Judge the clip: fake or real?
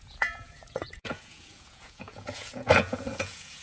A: fake